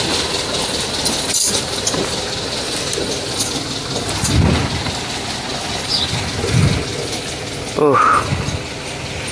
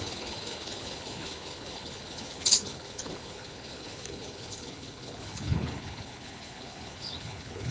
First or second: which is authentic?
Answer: first